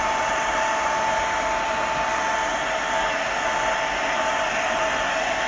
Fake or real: real